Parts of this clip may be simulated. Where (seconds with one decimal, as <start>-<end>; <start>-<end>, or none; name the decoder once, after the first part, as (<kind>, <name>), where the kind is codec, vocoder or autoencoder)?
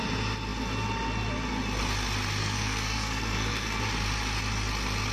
2.4-3.8 (codec, SNAC)